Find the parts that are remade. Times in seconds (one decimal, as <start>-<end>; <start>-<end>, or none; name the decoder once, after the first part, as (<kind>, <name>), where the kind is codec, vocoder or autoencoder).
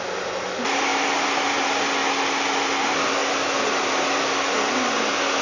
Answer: none